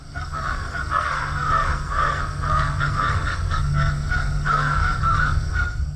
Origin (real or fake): fake